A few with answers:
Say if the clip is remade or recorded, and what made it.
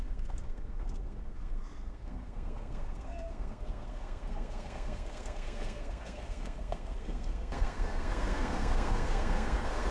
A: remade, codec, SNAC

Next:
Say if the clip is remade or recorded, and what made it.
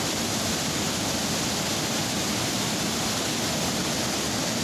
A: recorded